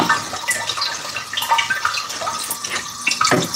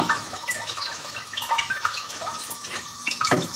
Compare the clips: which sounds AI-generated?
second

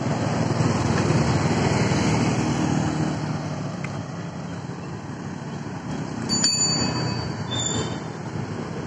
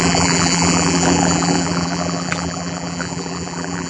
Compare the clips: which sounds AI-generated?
second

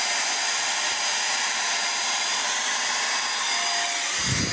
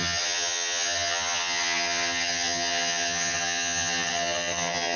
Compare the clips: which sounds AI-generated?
second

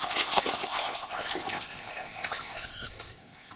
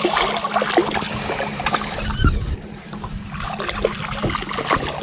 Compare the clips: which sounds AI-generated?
first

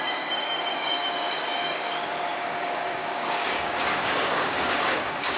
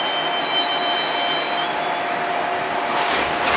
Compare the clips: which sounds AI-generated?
first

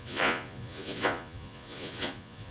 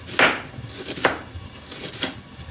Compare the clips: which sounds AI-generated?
first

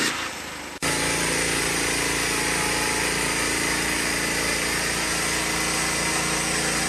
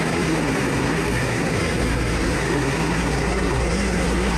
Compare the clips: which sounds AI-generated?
second